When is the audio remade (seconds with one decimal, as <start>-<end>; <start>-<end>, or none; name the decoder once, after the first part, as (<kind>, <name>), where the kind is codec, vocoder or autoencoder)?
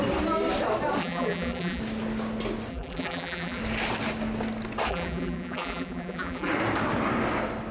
1.0-1.8 (vocoder, BigVGAN v2); 2.7-3.6; 4.9-6.5